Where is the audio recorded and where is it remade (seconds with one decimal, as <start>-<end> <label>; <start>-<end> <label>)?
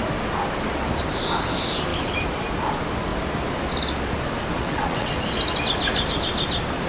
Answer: 0.0-4.5 recorded; 4.5-5.1 remade; 5.1-6.9 recorded